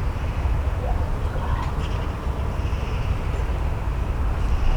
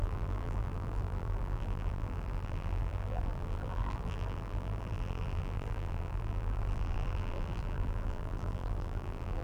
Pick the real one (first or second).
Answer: first